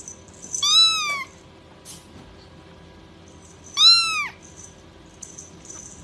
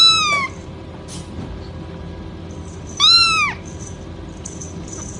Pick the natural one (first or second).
first